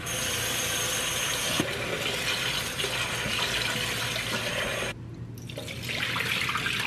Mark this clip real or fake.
real